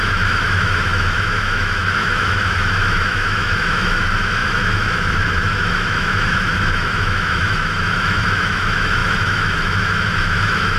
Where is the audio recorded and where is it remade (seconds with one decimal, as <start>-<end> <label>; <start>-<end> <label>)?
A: 0.0-10.8 remade